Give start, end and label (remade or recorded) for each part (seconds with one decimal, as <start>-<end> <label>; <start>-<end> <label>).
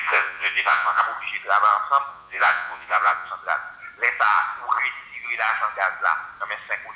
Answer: 0.0-1.0 remade; 1.0-2.1 recorded; 2.1-3.3 remade; 3.3-7.0 recorded